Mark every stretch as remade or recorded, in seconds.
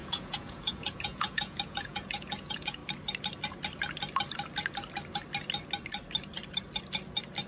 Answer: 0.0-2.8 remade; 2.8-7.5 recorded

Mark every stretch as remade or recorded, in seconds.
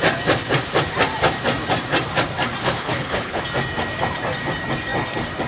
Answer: 0.0-2.6 recorded; 2.6-3.4 remade; 3.4-5.5 recorded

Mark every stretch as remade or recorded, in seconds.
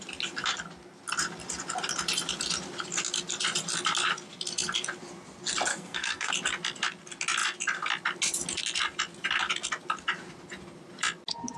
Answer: 0.0-5.7 recorded; 5.7-6.3 remade; 6.3-11.6 recorded